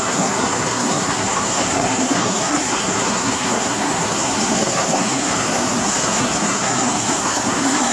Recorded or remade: remade